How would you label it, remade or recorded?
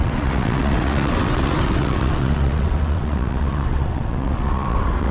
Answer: remade